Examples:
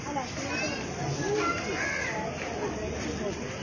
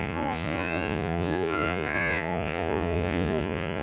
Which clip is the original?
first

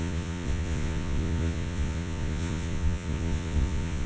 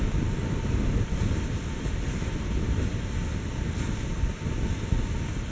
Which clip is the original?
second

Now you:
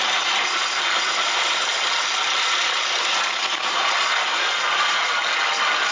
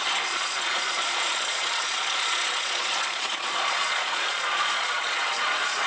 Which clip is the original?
first